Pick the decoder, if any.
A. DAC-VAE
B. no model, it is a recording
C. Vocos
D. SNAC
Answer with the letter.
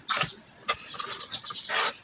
B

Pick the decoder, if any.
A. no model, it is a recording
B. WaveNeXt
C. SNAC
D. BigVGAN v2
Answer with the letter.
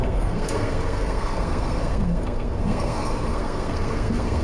C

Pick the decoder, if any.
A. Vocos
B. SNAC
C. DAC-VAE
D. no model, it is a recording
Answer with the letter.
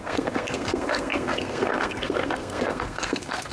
B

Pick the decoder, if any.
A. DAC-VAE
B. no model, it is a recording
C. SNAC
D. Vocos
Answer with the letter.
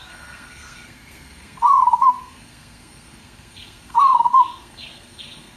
C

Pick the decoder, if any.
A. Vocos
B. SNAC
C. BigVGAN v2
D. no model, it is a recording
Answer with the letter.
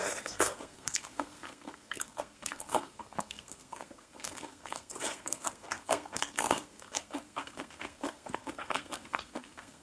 B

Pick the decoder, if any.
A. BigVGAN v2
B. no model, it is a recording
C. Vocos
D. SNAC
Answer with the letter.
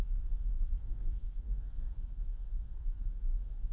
D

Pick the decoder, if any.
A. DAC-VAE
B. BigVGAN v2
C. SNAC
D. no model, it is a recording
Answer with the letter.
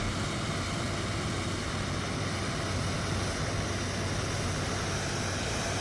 D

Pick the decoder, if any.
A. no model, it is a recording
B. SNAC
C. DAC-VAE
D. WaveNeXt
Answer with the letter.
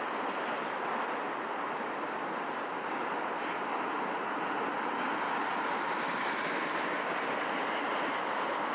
A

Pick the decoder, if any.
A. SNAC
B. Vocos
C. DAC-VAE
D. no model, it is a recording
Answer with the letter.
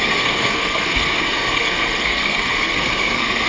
A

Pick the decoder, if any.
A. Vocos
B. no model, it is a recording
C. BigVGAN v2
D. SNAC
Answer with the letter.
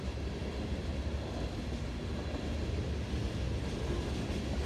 B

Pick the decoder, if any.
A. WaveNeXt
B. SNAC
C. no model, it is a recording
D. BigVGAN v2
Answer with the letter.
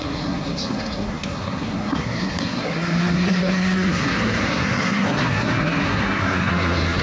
B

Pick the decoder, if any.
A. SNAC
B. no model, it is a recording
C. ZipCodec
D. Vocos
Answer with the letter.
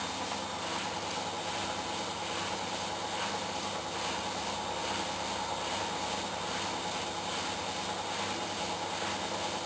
B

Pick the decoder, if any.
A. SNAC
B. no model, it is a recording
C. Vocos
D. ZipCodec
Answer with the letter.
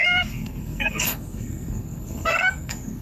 A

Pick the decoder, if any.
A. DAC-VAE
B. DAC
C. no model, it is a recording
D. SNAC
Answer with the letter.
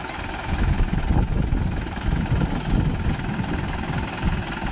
C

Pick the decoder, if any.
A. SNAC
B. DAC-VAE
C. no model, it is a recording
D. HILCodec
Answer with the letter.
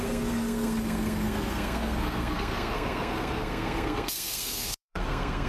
A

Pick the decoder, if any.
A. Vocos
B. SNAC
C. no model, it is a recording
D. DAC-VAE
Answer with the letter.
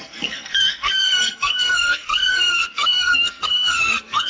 B